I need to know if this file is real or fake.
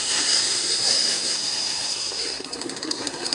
fake